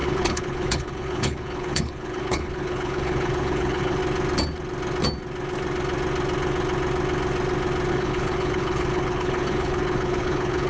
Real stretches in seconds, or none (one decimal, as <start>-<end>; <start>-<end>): 4.0-7.9